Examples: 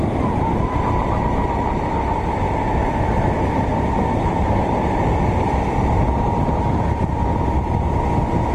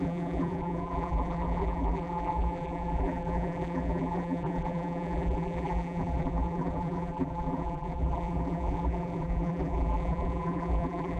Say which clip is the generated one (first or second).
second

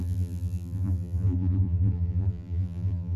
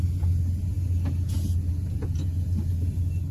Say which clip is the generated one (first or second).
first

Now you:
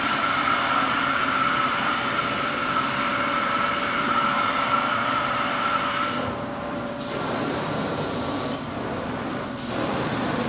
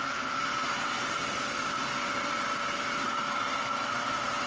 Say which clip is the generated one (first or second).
first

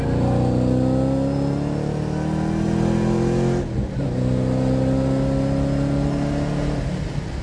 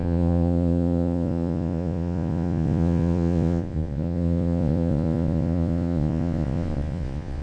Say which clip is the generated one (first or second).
second